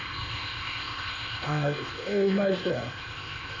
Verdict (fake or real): fake